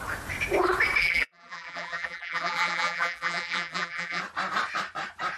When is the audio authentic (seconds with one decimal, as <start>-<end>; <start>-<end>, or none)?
0.0-1.0; 4.2-5.4